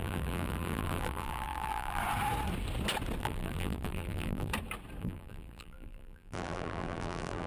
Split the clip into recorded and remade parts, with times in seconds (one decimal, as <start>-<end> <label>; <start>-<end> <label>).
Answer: 0.0-2.0 remade; 2.0-3.2 recorded; 3.2-4.5 remade; 4.5-5.0 recorded; 5.0-7.5 remade

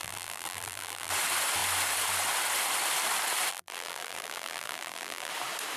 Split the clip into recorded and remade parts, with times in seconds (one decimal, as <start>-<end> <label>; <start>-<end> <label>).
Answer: 0.0-1.1 remade; 1.1-3.5 recorded; 3.5-5.3 remade; 5.3-5.8 recorded

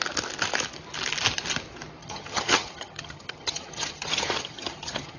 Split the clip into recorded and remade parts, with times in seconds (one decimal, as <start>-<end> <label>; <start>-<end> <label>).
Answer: 0.0-2.0 recorded; 2.0-5.2 remade

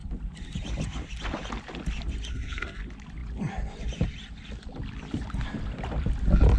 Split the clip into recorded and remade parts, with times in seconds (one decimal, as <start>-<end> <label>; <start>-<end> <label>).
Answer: 0.0-2.3 recorded; 2.3-2.8 remade; 2.8-6.6 recorded

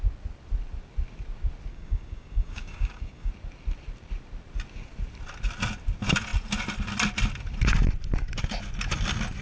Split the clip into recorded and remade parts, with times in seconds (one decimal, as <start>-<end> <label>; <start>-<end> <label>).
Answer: 0.0-1.7 recorded; 1.7-3.3 remade; 3.3-9.4 recorded

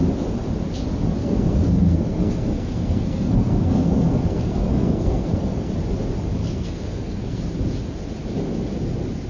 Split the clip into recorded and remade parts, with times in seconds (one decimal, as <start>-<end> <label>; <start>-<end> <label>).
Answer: 0.0-1.2 recorded; 1.2-5.7 remade; 5.7-6.4 recorded; 6.4-7.4 remade; 7.4-9.3 recorded